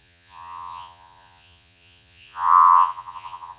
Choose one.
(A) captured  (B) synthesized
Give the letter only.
B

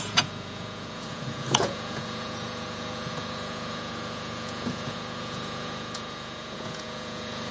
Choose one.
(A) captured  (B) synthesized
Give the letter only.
B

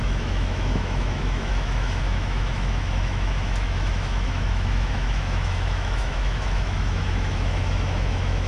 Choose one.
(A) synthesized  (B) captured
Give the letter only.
A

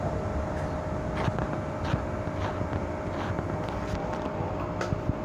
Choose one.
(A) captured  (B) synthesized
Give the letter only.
A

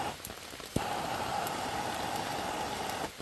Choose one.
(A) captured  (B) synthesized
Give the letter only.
A